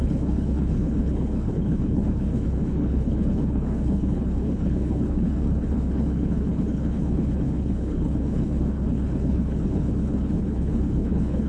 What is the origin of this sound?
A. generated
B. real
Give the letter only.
A